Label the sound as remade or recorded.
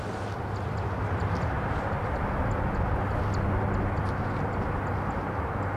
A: recorded